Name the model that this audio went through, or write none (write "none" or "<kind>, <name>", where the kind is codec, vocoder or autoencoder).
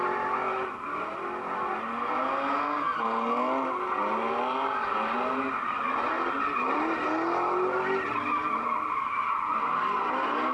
none